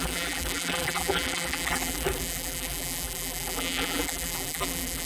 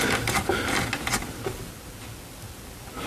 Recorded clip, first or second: second